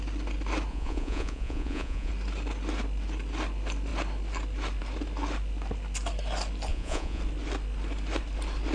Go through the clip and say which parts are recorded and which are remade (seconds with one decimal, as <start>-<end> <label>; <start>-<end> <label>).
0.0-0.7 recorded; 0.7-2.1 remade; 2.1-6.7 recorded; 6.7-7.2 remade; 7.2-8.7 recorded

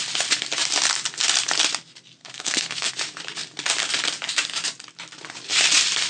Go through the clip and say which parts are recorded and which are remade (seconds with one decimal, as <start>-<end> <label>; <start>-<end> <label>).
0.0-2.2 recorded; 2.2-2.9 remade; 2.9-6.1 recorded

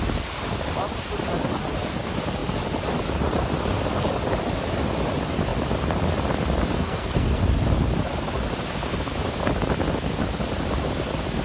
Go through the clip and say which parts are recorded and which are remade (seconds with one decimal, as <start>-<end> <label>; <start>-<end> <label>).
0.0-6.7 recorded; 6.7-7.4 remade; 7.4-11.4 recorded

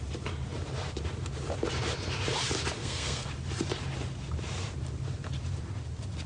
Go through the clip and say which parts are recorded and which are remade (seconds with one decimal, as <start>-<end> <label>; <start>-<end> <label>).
0.0-2.8 recorded; 2.8-3.3 remade; 3.3-6.3 recorded

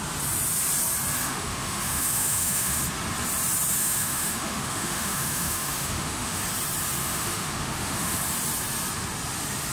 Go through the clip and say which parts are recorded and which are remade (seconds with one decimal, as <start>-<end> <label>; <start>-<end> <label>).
0.0-1.2 recorded; 1.2-2.8 remade; 2.8-3.8 recorded; 3.8-6.4 remade; 6.4-7.0 recorded; 7.0-8.2 remade; 8.2-9.7 recorded